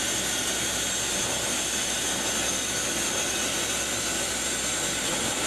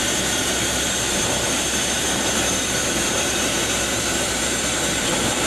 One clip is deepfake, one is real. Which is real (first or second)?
first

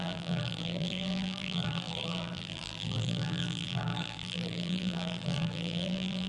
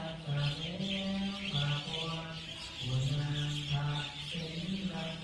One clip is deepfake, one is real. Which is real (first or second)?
second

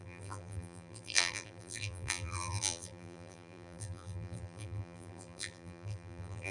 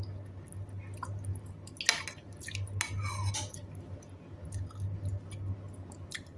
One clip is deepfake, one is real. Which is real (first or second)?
second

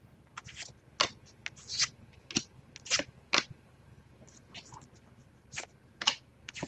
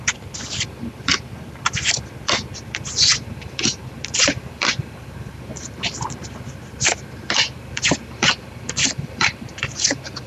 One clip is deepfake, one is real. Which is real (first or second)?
first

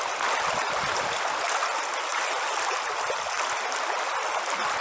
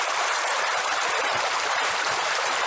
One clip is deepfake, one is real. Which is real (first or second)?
first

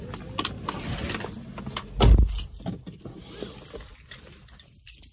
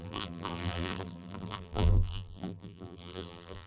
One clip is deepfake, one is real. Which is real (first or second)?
first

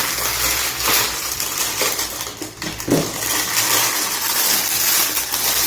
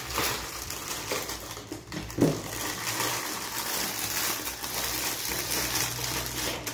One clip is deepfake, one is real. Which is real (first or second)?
first